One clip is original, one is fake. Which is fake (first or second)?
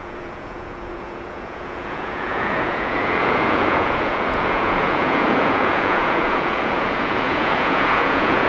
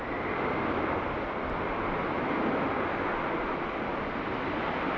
first